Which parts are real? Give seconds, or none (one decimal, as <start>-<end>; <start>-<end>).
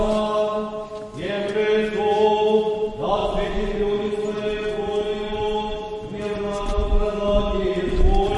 0.0-8.4